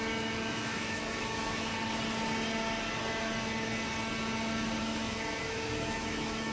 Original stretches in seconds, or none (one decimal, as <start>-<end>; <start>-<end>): 1.7-4.8